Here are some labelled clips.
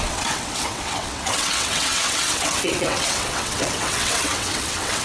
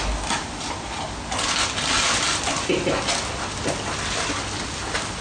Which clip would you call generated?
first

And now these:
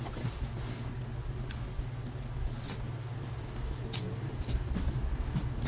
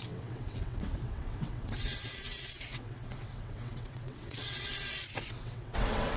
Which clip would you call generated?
second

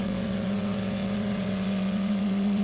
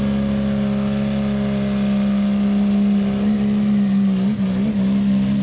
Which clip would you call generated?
first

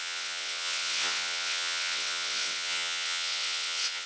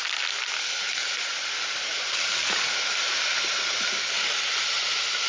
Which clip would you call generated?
first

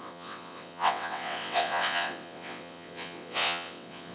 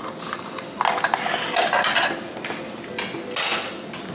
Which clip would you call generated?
first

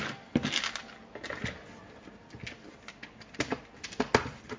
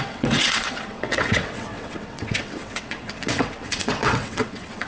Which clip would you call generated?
second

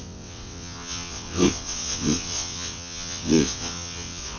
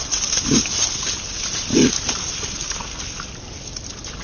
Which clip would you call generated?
first